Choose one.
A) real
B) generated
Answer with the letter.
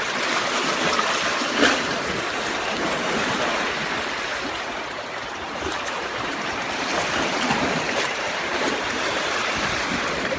B